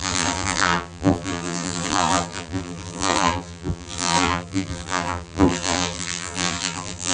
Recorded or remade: remade